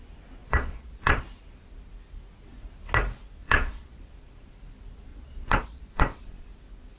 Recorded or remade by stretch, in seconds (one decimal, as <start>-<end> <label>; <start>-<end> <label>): 0.0-0.4 recorded; 0.4-1.2 remade; 1.2-3.4 recorded; 3.4-4.0 remade; 4.0-5.1 recorded; 5.1-6.2 remade; 6.2-7.0 recorded